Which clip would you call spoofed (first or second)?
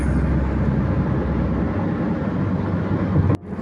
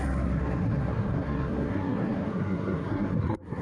second